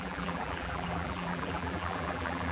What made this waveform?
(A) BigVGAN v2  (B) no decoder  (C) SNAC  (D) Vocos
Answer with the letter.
A